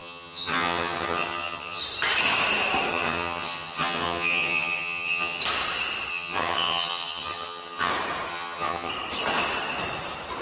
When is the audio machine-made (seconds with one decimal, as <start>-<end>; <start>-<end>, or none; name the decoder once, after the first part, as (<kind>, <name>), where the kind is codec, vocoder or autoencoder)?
0.0-1.8 (vocoder, HiFi-GAN); 2.9-5.4; 6.1-7.9; 8.3-8.9